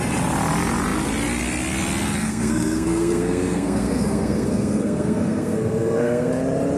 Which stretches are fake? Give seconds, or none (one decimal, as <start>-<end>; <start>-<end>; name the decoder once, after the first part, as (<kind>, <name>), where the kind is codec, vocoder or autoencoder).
2.2-6.3 (codec, SNAC)